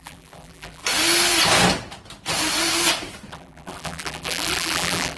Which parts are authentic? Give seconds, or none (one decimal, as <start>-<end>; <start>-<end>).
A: 0.8-3.3